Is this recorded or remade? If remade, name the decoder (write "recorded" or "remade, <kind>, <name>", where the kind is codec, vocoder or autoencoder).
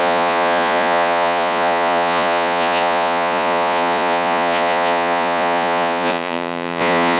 remade, vocoder, Vocos